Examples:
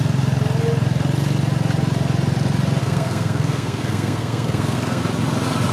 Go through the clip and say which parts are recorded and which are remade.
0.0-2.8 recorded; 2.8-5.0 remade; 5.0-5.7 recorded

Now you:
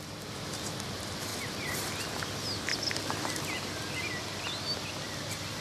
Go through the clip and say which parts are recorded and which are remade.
0.0-5.6 recorded

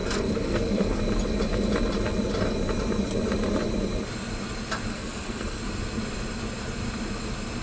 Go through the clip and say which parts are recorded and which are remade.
0.0-1.0 remade; 1.0-4.9 recorded; 4.9-5.6 remade; 5.6-7.6 recorded